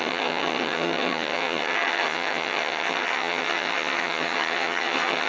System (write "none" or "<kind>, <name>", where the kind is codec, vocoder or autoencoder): vocoder, HiFi-GAN